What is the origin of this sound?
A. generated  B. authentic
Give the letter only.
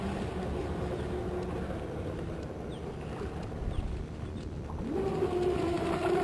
B